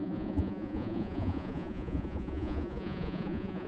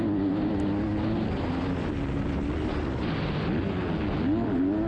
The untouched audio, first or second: second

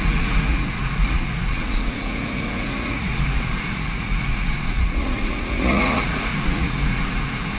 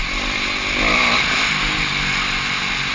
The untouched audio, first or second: second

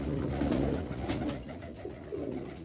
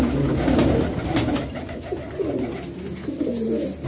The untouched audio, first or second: second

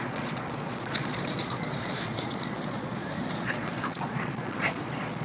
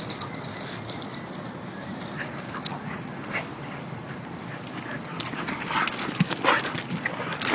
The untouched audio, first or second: second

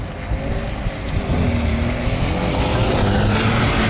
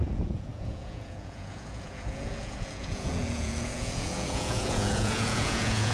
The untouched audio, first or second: first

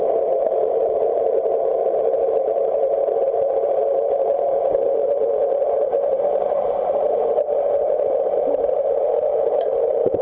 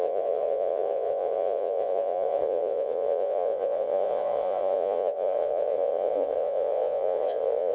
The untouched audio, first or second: first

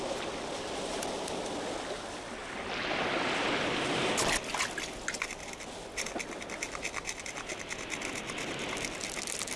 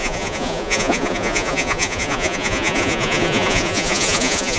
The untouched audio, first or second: first